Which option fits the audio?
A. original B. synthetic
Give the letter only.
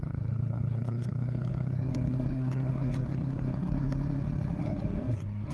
B